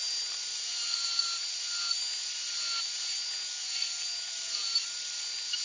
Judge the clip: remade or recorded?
recorded